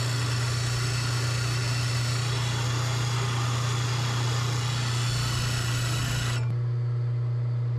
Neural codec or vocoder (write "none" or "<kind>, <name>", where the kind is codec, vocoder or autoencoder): none